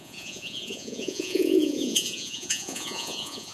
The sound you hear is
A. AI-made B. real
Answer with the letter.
A